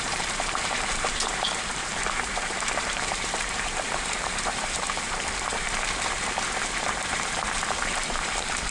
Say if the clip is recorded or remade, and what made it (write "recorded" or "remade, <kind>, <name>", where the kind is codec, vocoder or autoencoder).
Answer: remade, vocoder, BigVGAN v2